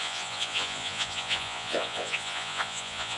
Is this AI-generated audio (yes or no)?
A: yes